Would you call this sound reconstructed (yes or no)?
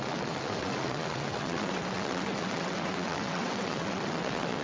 yes